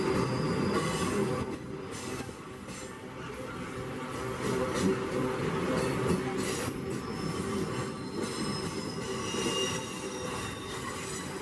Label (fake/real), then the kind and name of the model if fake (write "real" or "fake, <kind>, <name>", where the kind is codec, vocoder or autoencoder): real